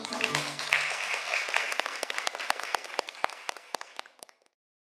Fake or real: fake